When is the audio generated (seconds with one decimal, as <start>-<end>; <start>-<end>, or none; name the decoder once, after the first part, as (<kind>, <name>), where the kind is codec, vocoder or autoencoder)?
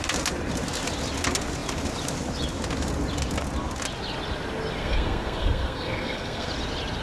4.8-6.5 (codec, SNAC)